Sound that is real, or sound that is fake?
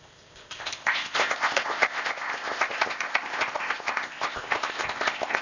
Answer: fake